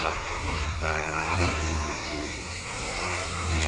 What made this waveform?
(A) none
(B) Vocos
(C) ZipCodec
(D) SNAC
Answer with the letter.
D